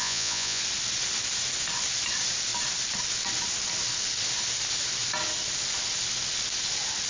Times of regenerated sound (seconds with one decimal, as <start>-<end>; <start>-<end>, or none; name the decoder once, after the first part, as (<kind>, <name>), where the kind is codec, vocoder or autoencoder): 0.0-0.6 (vocoder, Vocos)